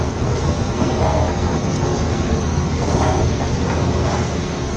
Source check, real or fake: fake